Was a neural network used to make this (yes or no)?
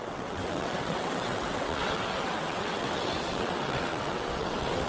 yes